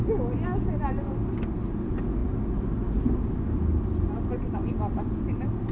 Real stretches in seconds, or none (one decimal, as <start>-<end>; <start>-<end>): 0.0-5.7